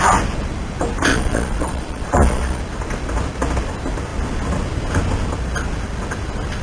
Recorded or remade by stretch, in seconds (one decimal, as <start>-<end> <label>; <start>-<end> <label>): 0.0-1.1 recorded; 1.1-2.6 remade; 2.6-6.6 recorded